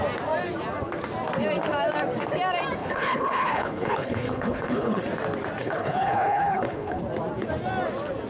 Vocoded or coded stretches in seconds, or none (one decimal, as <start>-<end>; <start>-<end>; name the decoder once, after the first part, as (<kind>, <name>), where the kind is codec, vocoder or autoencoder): 2.8-5.0 (codec, HILCodec); 5.6-7.0